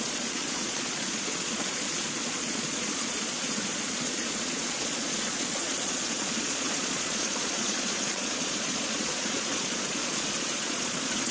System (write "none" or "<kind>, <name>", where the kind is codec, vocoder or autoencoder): vocoder, Vocos